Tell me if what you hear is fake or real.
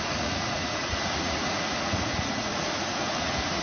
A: fake